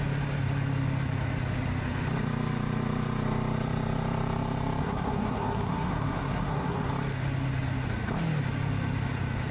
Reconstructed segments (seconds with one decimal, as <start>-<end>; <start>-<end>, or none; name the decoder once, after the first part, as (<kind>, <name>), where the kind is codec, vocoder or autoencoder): 4.8-6.9 (codec, SNAC)